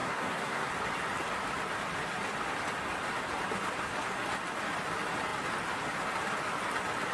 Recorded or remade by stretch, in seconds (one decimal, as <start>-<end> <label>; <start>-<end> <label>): 0.0-0.7 remade; 0.7-7.1 recorded